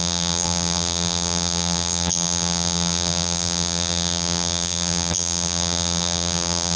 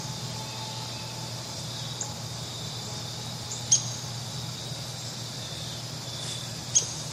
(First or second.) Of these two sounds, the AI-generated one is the first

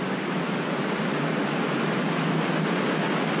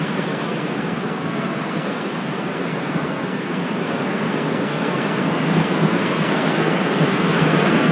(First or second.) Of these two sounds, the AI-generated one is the second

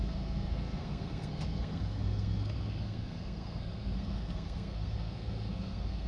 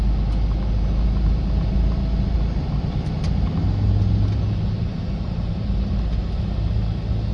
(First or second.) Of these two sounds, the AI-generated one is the first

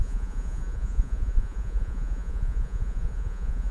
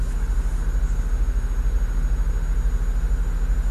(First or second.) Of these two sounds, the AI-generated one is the first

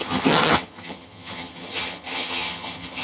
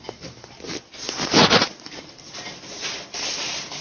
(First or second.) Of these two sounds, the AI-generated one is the first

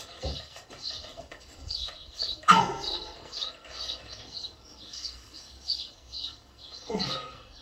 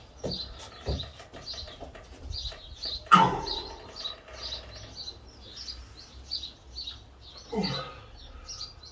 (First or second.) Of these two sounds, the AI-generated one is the first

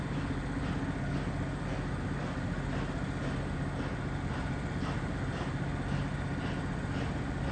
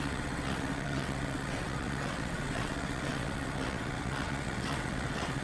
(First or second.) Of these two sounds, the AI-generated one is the second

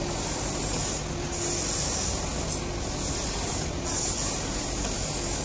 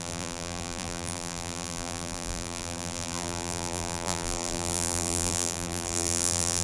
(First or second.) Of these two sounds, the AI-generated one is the second